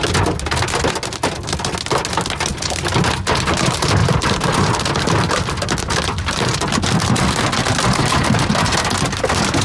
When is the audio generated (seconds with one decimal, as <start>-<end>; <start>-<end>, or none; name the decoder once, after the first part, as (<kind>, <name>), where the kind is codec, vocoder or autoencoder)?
2.5-3.0 (vocoder, BigVGAN v2); 4.0-7.4